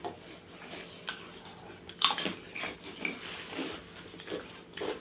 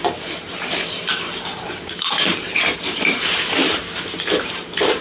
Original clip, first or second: first